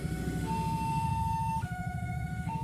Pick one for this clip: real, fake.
fake